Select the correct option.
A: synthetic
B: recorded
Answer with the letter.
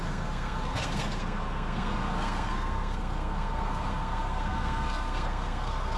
A